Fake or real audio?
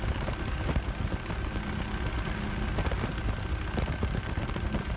real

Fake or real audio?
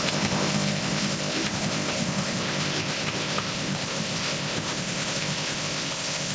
fake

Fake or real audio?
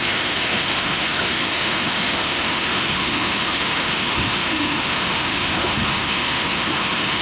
fake